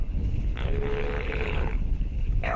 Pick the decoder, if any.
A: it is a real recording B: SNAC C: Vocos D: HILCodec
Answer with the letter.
D